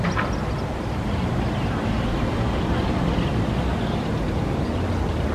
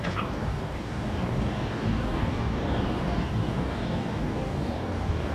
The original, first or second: first